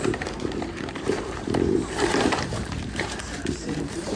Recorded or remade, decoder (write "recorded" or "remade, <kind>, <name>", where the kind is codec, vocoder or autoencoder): remade, vocoder, BigVGAN v2